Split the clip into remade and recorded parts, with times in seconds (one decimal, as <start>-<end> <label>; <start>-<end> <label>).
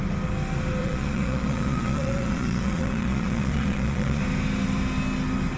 0.0-0.8 recorded; 0.8-4.2 remade; 4.2-5.6 recorded